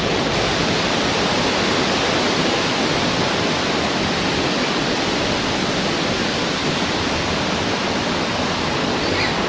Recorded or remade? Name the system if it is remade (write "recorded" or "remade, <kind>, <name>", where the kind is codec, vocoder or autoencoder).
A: recorded